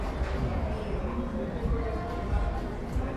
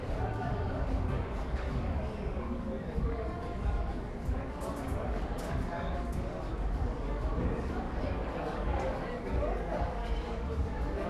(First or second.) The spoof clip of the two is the second